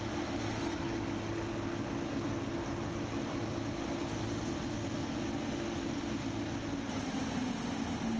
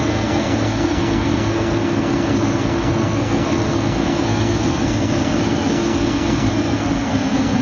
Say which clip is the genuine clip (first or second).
first